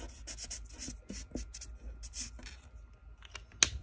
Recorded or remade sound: recorded